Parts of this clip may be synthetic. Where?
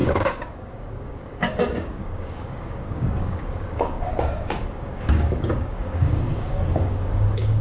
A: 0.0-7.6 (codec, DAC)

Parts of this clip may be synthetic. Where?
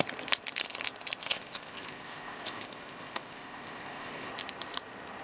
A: 1.2-4.3 (codec, ZipCodec)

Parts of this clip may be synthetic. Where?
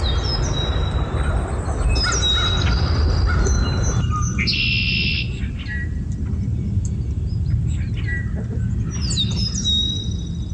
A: none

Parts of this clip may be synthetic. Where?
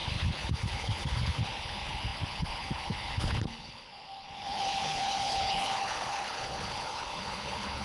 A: 0.0-7.8 (codec, HILCodec)